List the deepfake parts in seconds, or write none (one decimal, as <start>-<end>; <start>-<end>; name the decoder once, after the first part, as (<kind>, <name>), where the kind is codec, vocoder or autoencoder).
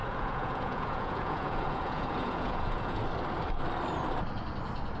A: 0.0-3.0 (vocoder, Vocos)